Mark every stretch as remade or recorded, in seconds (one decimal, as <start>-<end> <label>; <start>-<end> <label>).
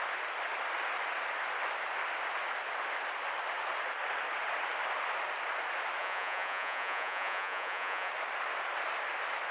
0.0-6.0 recorded; 6.0-8.1 remade; 8.1-9.5 recorded